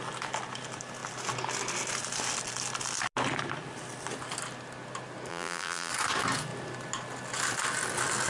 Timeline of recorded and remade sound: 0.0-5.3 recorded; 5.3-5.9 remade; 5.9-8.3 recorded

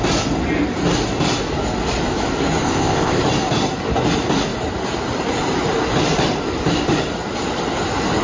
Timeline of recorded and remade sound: 0.0-2.6 recorded; 2.6-3.2 remade; 3.2-8.2 recorded

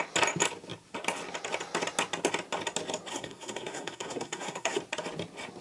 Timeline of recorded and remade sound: 0.0-3.1 recorded; 3.1-4.8 remade; 4.8-5.6 recorded